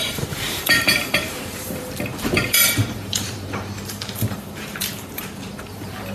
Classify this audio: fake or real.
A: fake